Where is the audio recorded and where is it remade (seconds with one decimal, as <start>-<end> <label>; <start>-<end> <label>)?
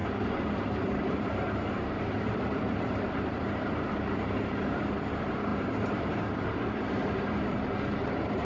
0.0-8.4 remade